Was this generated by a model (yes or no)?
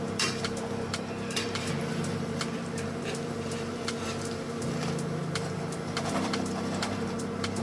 yes